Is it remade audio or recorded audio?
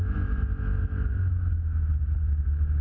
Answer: recorded